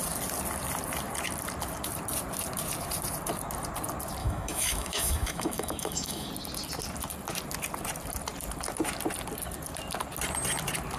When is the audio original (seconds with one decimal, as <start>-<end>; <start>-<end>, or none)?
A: 0.0-4.2; 6.3-11.0